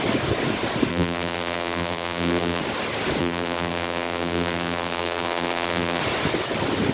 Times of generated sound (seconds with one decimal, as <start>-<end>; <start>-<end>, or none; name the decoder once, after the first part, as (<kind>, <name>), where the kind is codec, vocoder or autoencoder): 0.9-2.6 (vocoder, BigVGAN v2); 3.2-6.0